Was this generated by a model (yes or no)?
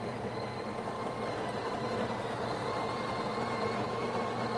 no